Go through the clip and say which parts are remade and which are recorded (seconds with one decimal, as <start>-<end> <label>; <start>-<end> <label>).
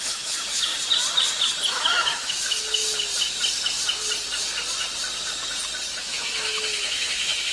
0.0-0.7 remade; 0.7-1.7 recorded; 1.7-2.8 remade; 2.8-6.0 recorded; 6.0-7.5 remade